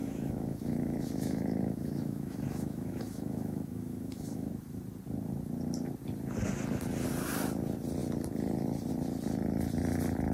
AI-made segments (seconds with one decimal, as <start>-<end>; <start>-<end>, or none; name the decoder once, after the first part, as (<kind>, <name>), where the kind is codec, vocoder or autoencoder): 0.0-4.5 (autoencoder, DAC-VAE)

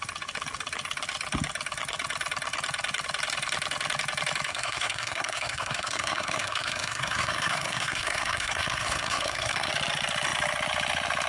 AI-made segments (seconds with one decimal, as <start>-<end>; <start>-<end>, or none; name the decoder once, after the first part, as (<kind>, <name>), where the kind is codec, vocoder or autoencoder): 4.5-9.7 (codec, SNAC)